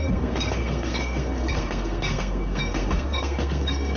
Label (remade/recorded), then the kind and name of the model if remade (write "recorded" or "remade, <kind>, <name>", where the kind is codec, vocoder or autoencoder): remade, codec, SNAC